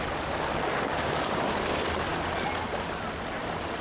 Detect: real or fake real